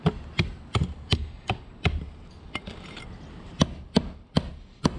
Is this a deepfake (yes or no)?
no